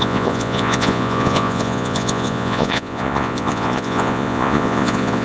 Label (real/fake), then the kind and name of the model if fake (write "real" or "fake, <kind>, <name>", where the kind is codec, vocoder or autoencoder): fake, vocoder, Vocos